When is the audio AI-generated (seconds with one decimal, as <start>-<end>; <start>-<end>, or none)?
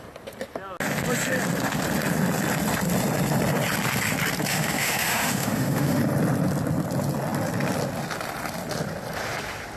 4.5-6.0